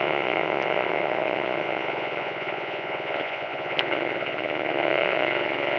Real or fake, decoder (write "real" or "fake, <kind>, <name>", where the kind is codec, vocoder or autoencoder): fake, vocoder, Vocos